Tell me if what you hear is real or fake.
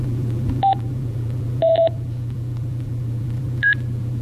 fake